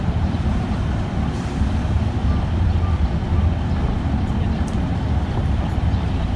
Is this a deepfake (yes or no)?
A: yes